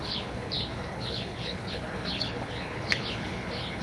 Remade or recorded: remade